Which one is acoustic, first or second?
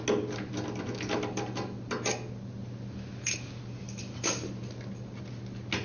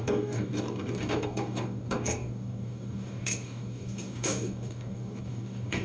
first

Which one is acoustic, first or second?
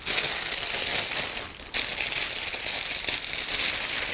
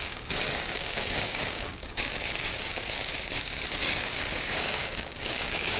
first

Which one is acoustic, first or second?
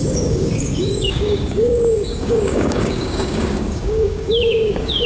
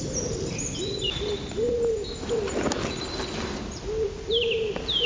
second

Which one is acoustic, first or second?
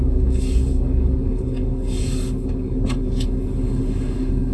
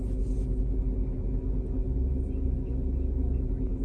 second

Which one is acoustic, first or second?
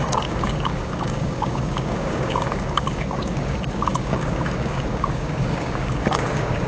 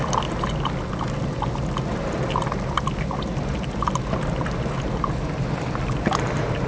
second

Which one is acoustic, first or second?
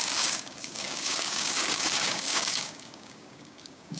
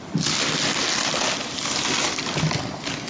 second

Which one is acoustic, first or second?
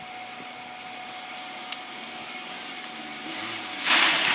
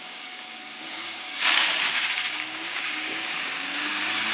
first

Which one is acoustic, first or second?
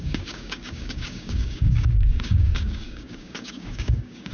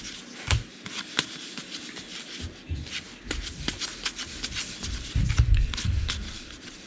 second